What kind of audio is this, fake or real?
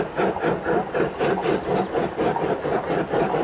real